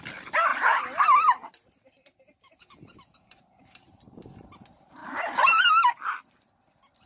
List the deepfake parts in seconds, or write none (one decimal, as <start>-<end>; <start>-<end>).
0.5-4.5; 5.0-5.7